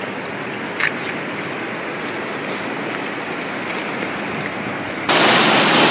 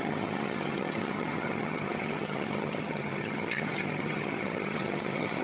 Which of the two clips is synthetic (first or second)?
second